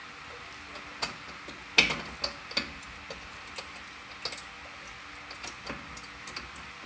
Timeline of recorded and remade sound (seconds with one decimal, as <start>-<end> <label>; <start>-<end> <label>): 0.0-6.9 recorded